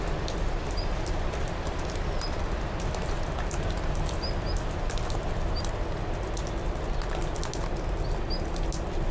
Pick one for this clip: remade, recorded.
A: recorded